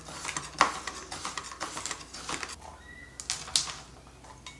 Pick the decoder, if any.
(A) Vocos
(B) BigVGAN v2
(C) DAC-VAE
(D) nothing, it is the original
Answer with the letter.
D